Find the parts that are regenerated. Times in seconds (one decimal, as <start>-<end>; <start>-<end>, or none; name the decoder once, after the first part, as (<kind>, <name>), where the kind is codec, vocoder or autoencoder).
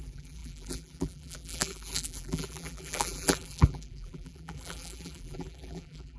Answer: 0.0-6.2 (vocoder, BigVGAN v2)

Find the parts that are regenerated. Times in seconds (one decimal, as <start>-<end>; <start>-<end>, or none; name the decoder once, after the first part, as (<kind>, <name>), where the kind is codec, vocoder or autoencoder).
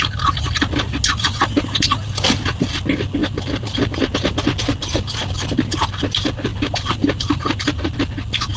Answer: 3.2-4.0 (vocoder, BigVGAN v2); 6.5-8.0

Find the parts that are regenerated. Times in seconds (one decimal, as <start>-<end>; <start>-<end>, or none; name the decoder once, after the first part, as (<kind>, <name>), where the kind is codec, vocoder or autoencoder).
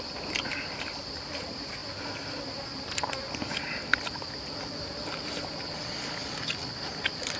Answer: none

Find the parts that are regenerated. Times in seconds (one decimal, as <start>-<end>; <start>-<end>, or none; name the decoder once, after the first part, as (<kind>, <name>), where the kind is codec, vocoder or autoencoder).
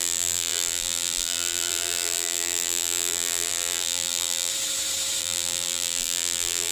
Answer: 0.0-4.5 (vocoder, BigVGAN v2); 5.2-6.7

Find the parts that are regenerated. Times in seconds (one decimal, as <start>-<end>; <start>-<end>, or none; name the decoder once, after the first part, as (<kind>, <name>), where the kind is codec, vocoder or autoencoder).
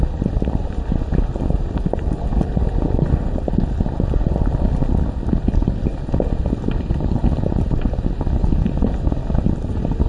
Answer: 0.0-5.9 (vocoder, BigVGAN v2); 6.4-10.1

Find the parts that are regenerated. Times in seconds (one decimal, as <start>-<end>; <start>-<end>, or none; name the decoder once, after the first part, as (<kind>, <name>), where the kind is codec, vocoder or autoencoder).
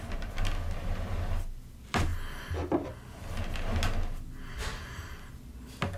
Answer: none